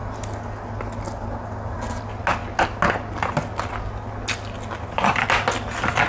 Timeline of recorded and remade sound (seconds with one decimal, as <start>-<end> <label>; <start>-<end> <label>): 0.0-6.1 recorded